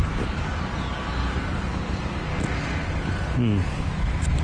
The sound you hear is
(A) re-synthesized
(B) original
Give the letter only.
B